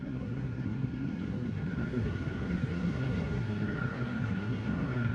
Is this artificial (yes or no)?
yes